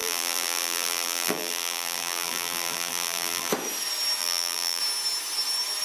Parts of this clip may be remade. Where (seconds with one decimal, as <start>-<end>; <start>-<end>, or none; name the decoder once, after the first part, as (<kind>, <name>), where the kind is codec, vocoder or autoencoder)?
0.0-3.5 (vocoder, BigVGAN v2); 4.2-4.8